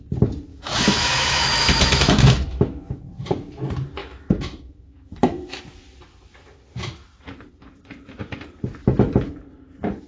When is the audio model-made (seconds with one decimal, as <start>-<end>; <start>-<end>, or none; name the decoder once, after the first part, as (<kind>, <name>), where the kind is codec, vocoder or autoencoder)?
0.5-3.0 (autoencoder, DAC-VAE); 4.0-5.6; 8.8-9.3